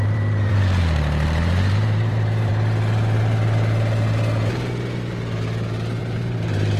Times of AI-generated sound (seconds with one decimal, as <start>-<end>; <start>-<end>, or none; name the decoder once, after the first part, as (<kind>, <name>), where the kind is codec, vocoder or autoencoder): 0.0-2.5 (vocoder, BigVGAN v2); 6.0-6.8